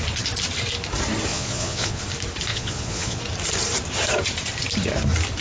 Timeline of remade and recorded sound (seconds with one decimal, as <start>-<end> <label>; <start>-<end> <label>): 0.0-1.3 recorded; 1.3-2.0 remade; 2.0-2.5 recorded; 2.5-3.2 remade; 3.2-5.4 recorded